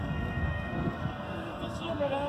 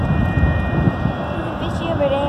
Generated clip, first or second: first